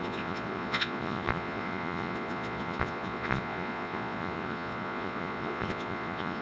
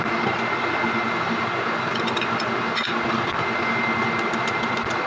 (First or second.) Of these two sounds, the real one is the second